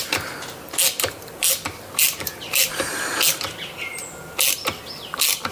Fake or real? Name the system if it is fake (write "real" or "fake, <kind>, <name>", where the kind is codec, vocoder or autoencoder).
real